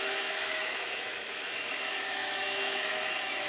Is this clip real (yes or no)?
no